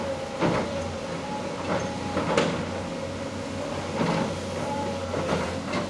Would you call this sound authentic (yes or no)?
yes